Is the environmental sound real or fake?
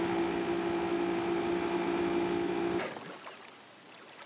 real